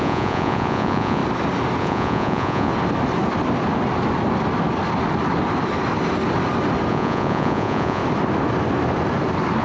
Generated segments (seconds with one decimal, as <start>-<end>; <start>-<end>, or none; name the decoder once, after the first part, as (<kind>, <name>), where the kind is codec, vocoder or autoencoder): 0.0-1.2 (vocoder, Vocos); 1.8-2.7; 6.9-8.0